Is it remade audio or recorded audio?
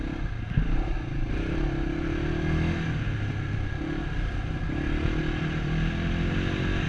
recorded